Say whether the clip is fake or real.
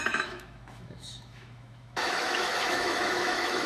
fake